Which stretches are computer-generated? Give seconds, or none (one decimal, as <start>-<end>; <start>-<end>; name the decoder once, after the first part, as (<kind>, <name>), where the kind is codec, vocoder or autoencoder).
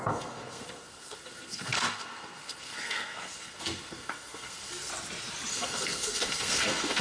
0.0-4.9 (codec, SNAC); 5.5-7.0